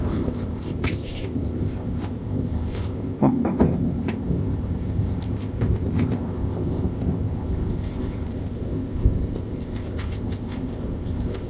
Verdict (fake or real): fake